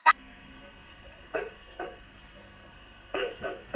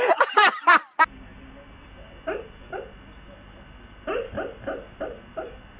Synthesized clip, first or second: first